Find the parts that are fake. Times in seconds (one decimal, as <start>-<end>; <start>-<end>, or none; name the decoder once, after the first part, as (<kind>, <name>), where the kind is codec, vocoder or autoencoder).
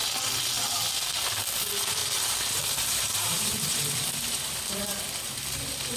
2.0-5.0 (vocoder, BigVGAN v2)